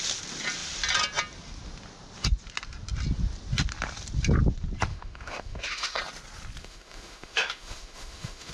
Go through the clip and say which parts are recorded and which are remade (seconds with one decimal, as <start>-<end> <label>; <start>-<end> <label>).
0.0-4.9 recorded; 4.9-6.0 remade; 6.0-6.6 recorded; 6.6-8.5 remade